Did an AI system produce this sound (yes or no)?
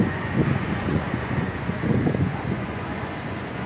yes